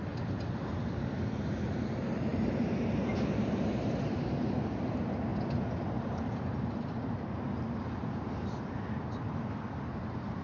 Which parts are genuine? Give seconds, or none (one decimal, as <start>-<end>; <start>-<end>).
0.0-2.3; 4.6-10.4